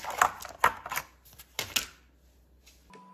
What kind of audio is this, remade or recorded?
recorded